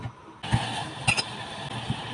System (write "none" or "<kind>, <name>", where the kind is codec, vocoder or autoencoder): none